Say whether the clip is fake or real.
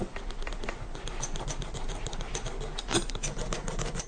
real